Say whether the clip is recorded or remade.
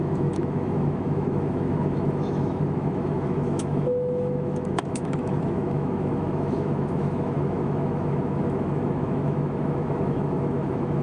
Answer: remade